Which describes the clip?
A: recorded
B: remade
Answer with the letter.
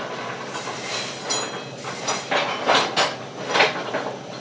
A